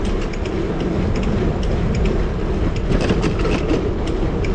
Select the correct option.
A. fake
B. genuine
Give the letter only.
B